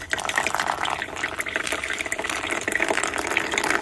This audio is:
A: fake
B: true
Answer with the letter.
A